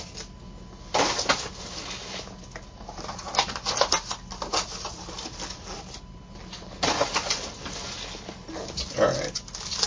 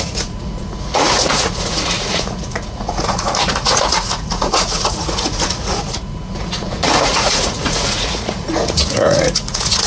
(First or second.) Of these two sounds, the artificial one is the second